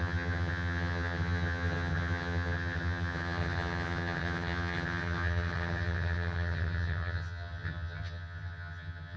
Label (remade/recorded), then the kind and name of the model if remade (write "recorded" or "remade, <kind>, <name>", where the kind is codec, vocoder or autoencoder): remade, vocoder, HiFi-GAN